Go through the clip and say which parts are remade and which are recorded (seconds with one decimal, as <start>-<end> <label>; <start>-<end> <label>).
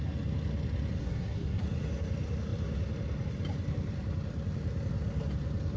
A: 0.0-1.0 recorded; 1.0-1.6 remade; 1.6-5.8 recorded